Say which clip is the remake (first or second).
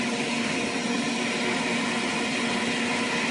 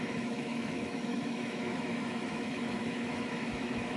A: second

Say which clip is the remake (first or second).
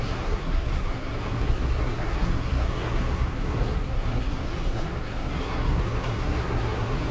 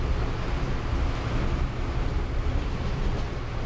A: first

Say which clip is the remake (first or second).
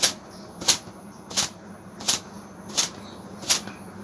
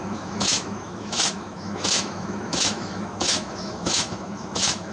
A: second